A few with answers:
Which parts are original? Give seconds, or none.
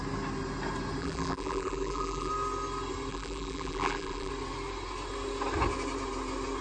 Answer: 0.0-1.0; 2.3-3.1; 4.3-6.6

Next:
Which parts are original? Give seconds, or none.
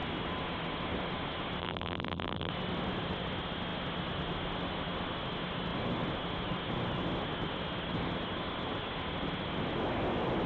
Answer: 0.0-1.6; 2.5-10.5